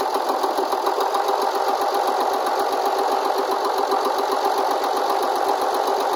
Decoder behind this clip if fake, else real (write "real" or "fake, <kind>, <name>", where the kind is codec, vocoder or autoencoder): real